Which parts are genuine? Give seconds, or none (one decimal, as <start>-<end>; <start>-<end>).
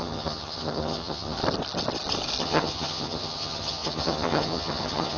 1.4-2.4